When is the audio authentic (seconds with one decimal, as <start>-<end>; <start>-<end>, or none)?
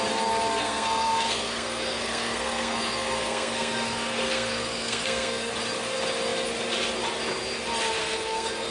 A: 0.0-0.6; 5.5-8.0